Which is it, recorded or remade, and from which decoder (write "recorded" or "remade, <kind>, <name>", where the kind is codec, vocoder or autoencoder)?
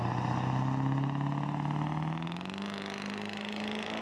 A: recorded